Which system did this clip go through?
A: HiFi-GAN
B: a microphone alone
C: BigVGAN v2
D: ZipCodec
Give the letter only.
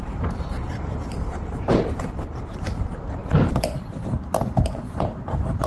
C